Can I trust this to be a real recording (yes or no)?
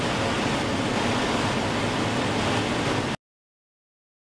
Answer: yes